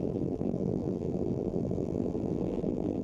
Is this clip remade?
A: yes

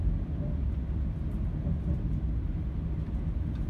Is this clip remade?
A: no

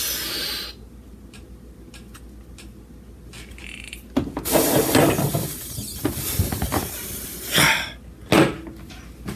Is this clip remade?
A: no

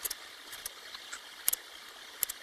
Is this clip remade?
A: yes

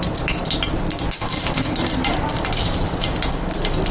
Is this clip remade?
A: no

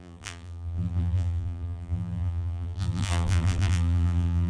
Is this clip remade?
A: yes